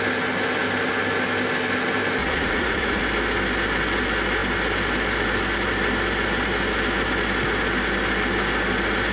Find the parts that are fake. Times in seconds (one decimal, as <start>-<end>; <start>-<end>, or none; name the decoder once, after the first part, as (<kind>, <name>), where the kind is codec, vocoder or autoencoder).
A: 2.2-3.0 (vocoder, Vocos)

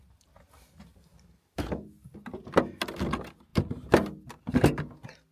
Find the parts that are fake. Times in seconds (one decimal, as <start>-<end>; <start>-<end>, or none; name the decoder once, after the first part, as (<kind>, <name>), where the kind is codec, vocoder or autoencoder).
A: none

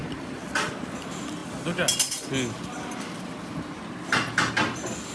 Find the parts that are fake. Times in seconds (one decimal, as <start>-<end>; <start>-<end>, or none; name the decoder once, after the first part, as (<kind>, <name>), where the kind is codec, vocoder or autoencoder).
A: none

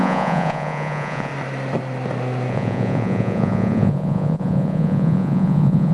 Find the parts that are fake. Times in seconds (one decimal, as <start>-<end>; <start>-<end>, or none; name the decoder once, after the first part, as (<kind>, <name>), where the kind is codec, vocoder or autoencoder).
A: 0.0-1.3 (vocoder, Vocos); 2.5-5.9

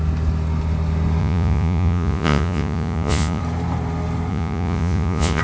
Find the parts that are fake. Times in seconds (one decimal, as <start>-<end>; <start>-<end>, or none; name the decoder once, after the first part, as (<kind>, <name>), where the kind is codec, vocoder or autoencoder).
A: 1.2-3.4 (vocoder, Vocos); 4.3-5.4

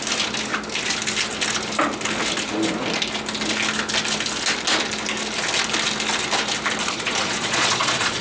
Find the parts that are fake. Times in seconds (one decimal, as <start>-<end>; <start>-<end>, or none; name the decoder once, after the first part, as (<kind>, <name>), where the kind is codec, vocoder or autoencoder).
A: 6.8-8.2 (vocoder, Vocos)

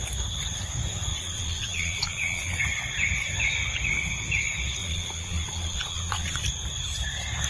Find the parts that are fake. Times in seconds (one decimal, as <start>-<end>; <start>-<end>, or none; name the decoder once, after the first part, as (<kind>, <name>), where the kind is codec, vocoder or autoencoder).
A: 1.1-2.6 (vocoder, Vocos); 4.8-6.4

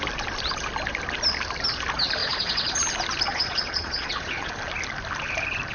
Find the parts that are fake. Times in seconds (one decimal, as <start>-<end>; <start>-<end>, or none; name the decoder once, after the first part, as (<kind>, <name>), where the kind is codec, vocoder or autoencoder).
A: 2.2-2.7 (vocoder, Vocos); 3.3-4.5